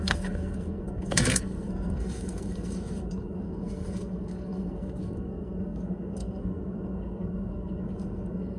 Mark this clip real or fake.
fake